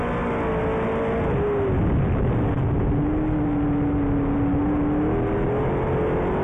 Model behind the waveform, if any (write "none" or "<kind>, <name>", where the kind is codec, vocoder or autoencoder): none